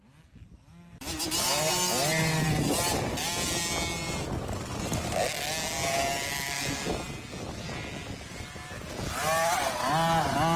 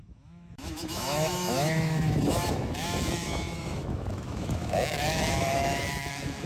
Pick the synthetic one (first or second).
second